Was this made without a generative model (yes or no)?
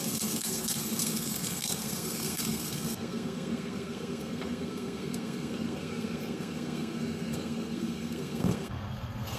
no